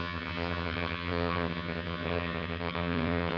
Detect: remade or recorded remade